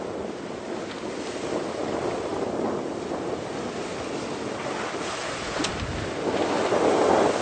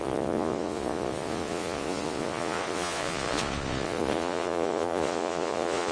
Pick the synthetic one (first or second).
second